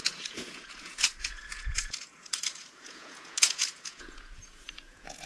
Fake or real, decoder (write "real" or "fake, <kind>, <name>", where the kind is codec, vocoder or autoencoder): fake, vocoder, Vocos